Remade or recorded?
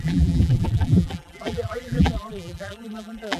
remade